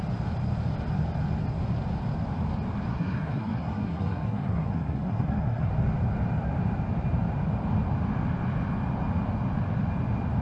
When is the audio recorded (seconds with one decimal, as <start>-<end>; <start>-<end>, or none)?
0.0-2.9; 5.7-10.4